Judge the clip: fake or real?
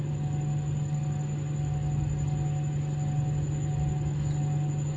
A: real